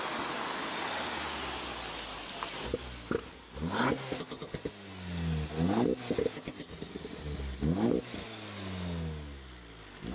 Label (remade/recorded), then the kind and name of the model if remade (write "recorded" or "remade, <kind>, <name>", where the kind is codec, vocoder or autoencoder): recorded